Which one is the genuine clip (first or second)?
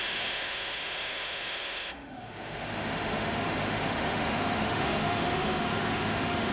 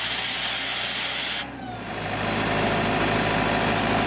second